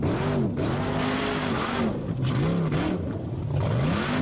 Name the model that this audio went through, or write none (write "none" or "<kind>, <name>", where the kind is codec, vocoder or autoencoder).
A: none